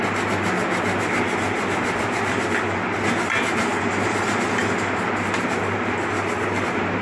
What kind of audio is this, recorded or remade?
recorded